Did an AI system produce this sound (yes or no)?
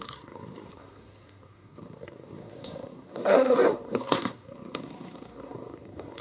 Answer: yes